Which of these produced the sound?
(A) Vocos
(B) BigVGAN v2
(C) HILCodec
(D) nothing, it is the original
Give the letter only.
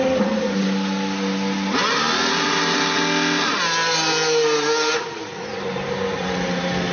D